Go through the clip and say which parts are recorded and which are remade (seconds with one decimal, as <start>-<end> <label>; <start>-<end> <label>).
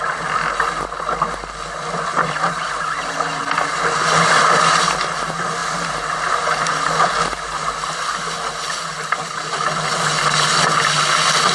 0.0-11.5 recorded